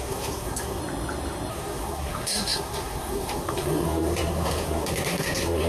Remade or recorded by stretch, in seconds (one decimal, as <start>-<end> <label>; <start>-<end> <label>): 0.0-0.8 remade; 0.8-1.5 recorded; 1.5-5.7 remade